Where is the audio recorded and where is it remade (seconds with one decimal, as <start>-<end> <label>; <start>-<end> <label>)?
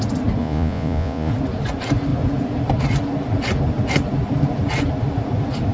0.0-0.4 recorded; 0.4-1.3 remade; 1.3-5.7 recorded